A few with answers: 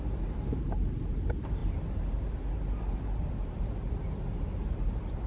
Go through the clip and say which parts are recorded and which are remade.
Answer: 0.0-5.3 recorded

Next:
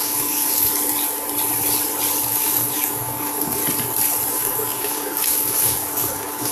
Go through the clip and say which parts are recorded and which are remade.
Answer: 0.0-0.7 remade; 0.7-2.3 recorded; 2.3-3.6 remade; 3.6-4.3 recorded; 4.3-6.5 remade